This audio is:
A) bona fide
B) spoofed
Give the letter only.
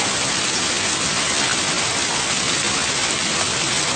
A